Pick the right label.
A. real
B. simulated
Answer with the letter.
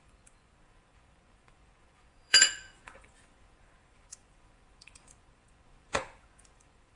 B